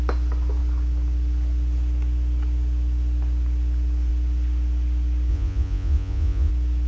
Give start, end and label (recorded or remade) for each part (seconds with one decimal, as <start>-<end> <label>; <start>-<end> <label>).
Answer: 0.0-5.3 recorded; 5.3-6.5 remade; 6.5-6.9 recorded